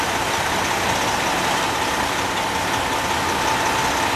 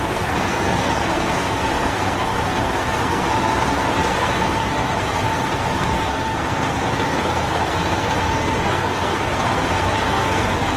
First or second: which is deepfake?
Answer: second